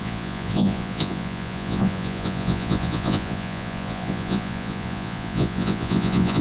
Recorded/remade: remade